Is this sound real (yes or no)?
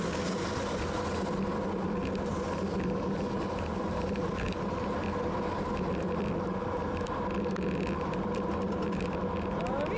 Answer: yes